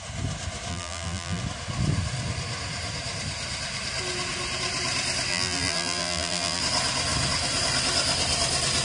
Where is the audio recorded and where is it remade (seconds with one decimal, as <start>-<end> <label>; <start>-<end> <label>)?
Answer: 0.0-0.7 recorded; 0.7-1.4 remade; 1.4-5.3 recorded; 5.3-6.6 remade; 6.6-8.8 recorded